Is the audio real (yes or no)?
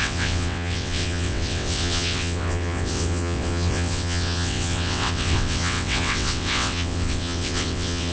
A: no